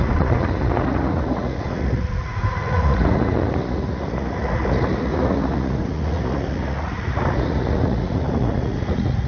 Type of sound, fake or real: fake